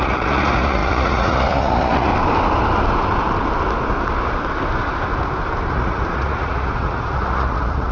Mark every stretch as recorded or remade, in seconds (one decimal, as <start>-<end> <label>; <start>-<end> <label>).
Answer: 0.0-2.1 remade; 2.1-5.7 recorded; 5.7-7.9 remade